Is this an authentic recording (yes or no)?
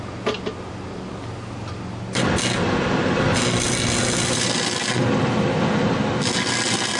yes